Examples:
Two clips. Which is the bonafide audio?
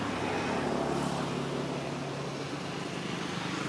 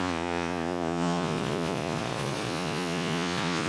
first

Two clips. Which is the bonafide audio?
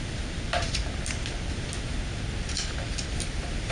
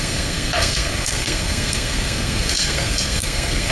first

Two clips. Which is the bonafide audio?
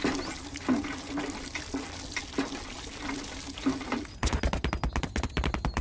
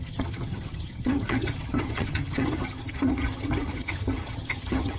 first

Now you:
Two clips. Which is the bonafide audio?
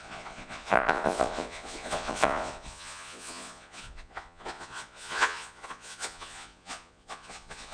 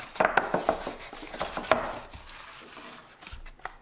second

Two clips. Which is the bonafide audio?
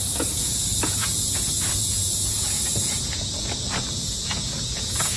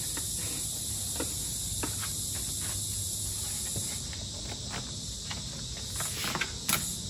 second